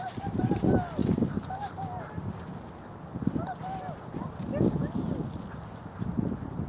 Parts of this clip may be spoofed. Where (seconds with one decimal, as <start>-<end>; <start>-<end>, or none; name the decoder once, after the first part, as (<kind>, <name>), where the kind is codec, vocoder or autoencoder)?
1.0-2.0 (vocoder, BigVGAN v2)